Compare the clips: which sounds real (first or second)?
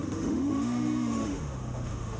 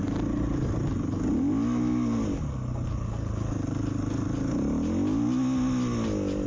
second